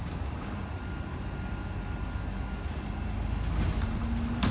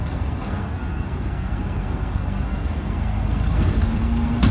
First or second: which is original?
first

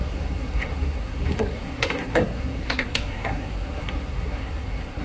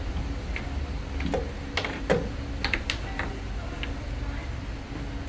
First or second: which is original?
second